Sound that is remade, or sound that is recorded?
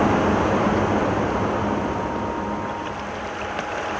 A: recorded